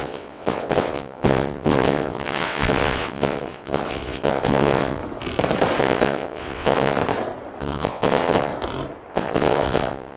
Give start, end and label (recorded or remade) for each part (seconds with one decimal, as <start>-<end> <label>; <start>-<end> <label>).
0.0-5.0 remade; 5.0-5.8 recorded; 5.8-7.0 remade; 7.0-7.6 recorded; 7.6-8.5 remade; 8.5-9.1 recorded; 9.1-10.2 remade